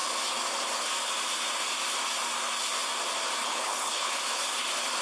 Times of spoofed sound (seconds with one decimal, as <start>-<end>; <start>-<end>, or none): 3.4-4.2